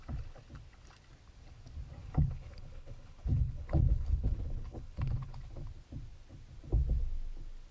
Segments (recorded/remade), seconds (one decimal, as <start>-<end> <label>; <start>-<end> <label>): 0.0-2.0 recorded; 2.0-5.5 remade; 5.5-7.7 recorded